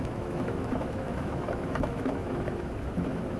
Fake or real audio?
fake